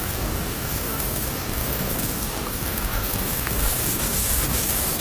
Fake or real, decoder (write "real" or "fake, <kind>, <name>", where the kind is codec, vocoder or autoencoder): fake, codec, DAC